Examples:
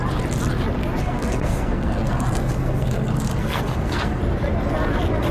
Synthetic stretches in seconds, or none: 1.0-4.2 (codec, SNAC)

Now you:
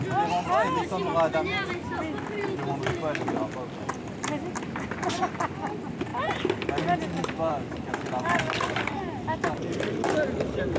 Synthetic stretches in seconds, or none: none

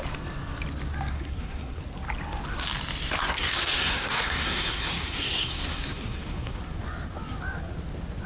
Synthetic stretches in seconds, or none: 1.1-1.8 (codec, SNAC); 3.2-6.6